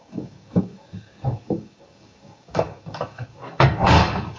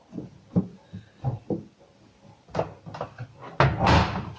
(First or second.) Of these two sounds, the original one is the second